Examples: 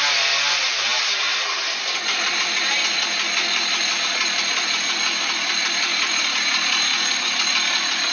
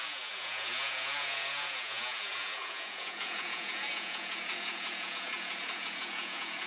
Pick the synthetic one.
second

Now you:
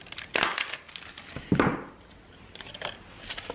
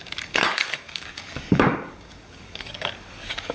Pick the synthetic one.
second